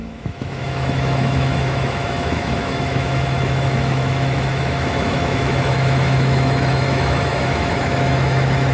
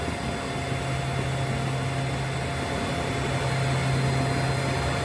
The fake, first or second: first